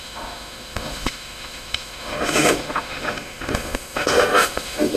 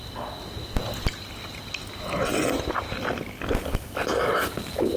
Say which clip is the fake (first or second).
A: first